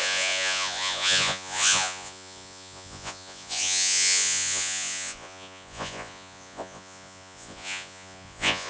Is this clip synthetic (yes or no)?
yes